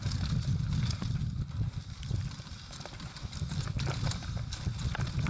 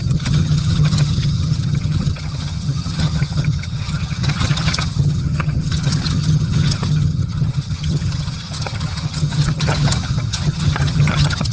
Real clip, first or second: first